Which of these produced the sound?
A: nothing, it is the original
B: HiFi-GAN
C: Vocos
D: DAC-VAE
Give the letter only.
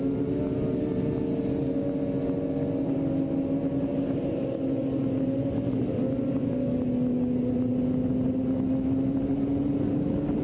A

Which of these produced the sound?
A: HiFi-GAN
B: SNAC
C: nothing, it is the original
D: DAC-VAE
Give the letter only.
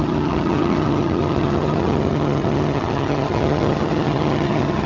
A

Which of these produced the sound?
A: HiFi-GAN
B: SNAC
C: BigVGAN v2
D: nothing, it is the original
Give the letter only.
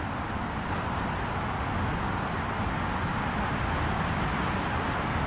D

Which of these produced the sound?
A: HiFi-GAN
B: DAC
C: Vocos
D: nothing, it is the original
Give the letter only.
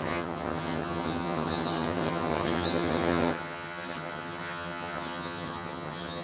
A